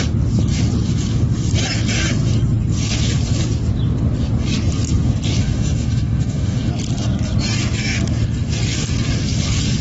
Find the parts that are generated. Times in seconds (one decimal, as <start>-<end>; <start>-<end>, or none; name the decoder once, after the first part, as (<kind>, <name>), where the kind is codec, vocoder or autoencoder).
5.4-6.7 (codec, DAC)